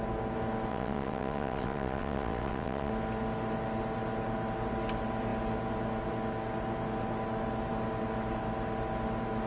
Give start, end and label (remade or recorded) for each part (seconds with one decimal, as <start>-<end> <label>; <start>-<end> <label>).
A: 0.0-0.7 recorded; 0.7-2.9 remade; 2.9-9.5 recorded